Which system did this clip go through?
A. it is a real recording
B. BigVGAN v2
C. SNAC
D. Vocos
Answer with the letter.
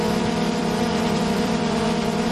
B